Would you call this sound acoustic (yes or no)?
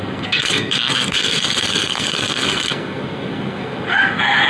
no